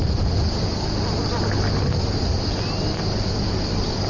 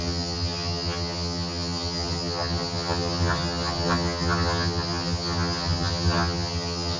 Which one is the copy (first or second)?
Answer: second